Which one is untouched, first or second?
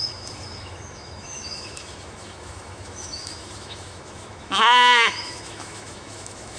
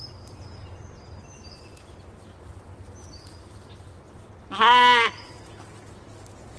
second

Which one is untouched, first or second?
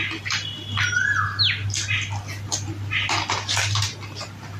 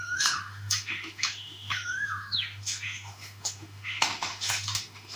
first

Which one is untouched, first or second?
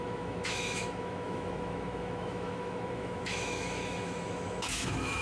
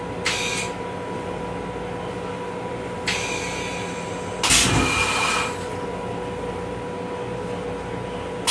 second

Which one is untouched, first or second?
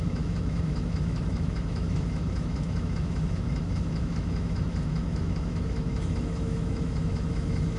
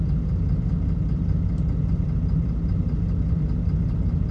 second